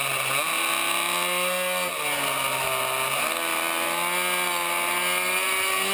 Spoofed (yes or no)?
no